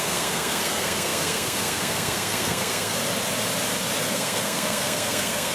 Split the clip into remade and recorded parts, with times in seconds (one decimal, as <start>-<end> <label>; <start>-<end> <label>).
0.0-3.0 remade; 3.0-4.0 recorded; 4.0-5.5 remade